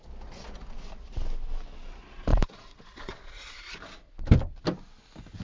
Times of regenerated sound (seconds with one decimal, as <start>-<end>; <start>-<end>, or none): 2.3-3.3